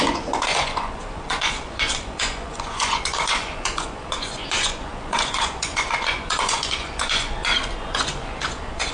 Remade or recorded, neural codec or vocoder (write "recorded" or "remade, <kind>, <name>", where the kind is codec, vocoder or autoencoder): remade, vocoder, Vocos